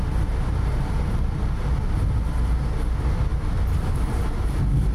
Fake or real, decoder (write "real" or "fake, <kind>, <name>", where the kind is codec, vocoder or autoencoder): real